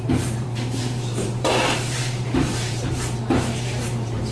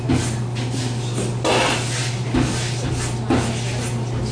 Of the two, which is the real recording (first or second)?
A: second